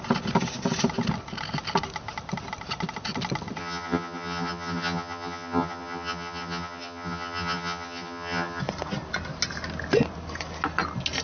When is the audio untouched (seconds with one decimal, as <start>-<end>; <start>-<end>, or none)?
0.0-3.6; 8.6-11.2